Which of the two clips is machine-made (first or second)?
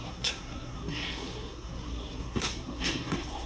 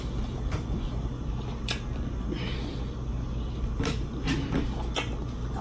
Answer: first